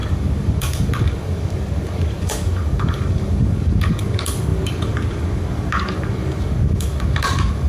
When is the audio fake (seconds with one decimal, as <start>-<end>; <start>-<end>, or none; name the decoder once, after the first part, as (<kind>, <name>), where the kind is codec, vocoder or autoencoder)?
0.0-7.7 (codec, DAC)